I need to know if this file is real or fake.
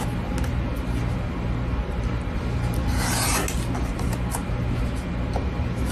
real